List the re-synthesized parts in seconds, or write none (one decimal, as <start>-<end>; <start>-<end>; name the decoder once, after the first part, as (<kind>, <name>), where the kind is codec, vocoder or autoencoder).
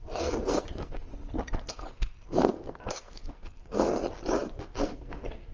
0.0-1.1 (codec, SNAC); 1.7-4.0; 4.6-5.5